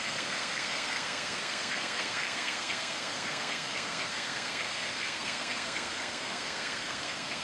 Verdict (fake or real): fake